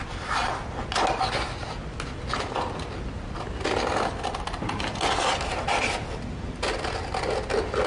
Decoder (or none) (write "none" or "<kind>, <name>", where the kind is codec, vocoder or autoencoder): none